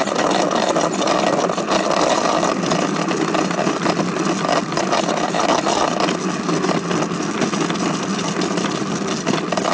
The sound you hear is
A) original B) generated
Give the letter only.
A